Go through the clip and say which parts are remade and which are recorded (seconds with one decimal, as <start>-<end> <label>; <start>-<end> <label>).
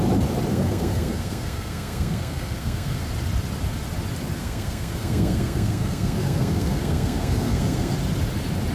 0.0-0.5 recorded; 0.5-3.0 remade; 3.0-4.4 recorded; 4.4-7.9 remade; 7.9-8.7 recorded